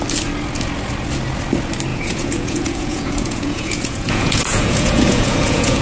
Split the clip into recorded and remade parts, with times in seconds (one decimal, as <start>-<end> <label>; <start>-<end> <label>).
0.0-1.9 recorded; 1.9-5.8 remade